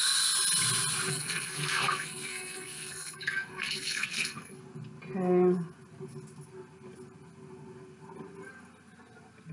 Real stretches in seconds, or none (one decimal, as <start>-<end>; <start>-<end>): 0.0-1.1; 4.6-9.5